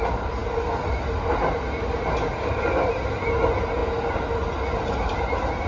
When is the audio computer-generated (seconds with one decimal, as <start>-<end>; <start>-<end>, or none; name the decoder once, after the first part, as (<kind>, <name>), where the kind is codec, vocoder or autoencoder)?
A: none